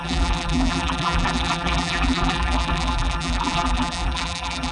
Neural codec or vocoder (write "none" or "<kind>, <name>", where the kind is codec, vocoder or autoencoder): vocoder, BigVGAN v2